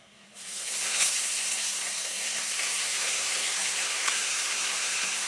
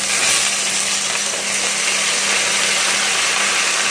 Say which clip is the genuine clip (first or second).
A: second